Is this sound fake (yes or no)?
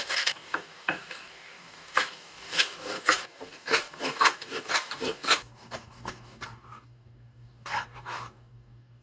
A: yes